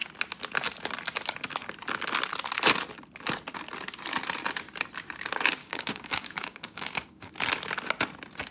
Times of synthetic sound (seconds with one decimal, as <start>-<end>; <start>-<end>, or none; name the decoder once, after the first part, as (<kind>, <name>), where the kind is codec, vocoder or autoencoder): 5.6-7.3 (codec, DAC)